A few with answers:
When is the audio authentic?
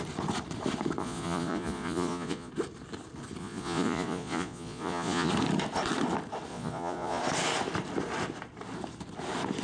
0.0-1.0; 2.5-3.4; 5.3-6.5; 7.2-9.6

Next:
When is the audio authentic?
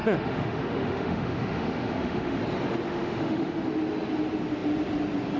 2.4-2.9; 3.6-5.4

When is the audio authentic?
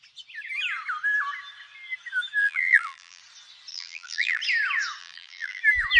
0.0-2.4; 3.2-3.7; 4.4-5.0; 5.6-6.0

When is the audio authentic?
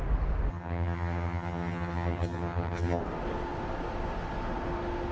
0.0-0.5; 3.0-5.1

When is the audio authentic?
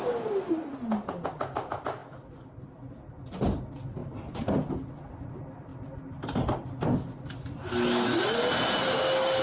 0.0-4.0; 4.9-9.4